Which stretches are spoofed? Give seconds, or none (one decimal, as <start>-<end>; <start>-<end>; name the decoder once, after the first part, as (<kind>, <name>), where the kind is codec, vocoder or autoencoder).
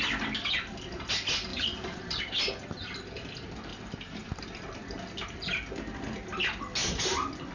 1.5-2.2 (vocoder, BigVGAN v2); 3.7-4.4